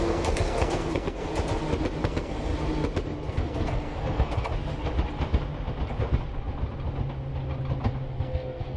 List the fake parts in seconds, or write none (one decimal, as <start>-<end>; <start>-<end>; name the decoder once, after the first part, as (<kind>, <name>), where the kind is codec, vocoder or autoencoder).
0.0-1.3 (codec, SNAC); 2.0-2.5; 3.3-4.5; 8.1-8.8